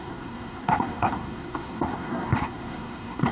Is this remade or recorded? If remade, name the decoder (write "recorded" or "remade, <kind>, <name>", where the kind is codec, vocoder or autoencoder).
remade, codec, SNAC